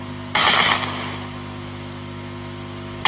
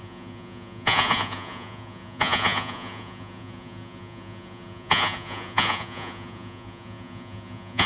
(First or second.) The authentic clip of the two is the first